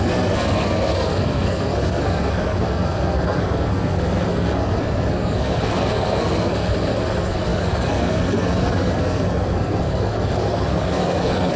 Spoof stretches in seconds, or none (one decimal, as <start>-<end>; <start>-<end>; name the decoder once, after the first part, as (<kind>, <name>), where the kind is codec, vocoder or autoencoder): 0.0-11.6 (codec, SNAC)